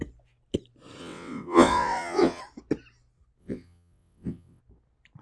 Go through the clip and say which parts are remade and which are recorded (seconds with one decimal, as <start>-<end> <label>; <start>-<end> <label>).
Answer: 0.0-1.0 recorded; 1.0-2.4 remade; 2.4-3.4 recorded; 3.4-4.6 remade; 4.6-5.2 recorded